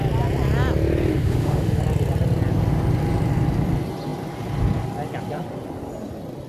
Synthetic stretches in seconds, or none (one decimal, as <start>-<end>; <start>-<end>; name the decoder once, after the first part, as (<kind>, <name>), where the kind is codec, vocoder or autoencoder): 1.1-1.8 (autoencoder, DAC-VAE)